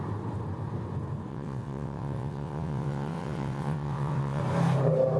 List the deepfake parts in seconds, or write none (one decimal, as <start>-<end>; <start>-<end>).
1.3-4.4